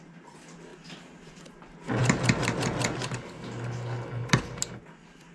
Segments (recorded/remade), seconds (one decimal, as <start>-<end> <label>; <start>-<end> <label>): 0.0-0.7 recorded; 0.7-1.4 remade; 1.4-2.0 recorded; 2.0-2.6 remade; 2.6-5.3 recorded